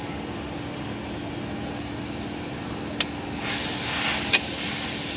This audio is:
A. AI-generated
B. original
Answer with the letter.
B